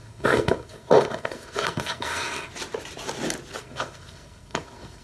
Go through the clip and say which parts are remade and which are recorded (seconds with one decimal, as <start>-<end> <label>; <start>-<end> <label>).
0.0-2.5 remade; 2.5-3.6 recorded; 3.6-5.0 remade